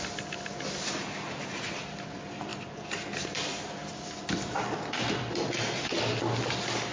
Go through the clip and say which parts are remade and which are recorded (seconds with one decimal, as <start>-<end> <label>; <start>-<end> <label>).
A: 0.0-6.9 remade